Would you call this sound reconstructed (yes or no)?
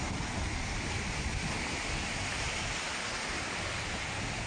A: no